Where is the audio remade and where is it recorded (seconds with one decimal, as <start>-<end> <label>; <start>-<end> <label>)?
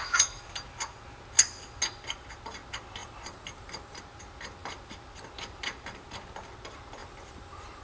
0.0-3.0 recorded; 3.0-4.0 remade; 4.0-7.0 recorded; 7.0-7.8 remade